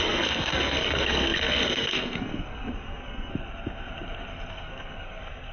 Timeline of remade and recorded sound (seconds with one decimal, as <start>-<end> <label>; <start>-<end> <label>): 0.0-3.3 remade; 3.3-4.5 recorded; 4.5-5.5 remade